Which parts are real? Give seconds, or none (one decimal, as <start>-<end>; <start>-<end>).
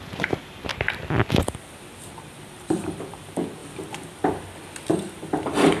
0.7-2.1; 3.6-5.2